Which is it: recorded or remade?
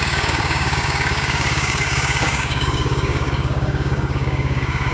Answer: remade